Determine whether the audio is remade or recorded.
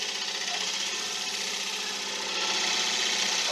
recorded